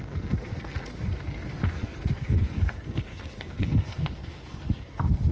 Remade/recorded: remade